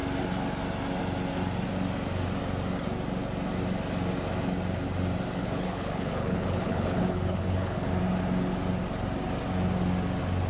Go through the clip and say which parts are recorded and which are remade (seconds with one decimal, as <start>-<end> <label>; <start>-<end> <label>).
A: 0.0-5.4 recorded; 5.4-7.9 remade; 7.9-10.5 recorded